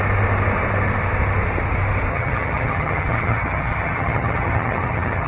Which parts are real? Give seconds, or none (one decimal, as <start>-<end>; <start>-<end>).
0.0-2.1